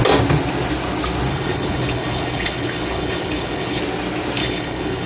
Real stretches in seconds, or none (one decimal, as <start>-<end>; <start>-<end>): 0.0-1.3; 3.8-4.4